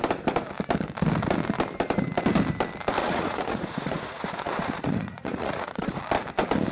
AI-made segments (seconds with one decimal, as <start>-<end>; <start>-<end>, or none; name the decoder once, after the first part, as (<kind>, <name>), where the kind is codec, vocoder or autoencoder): 3.0-6.0 (vocoder, Vocos)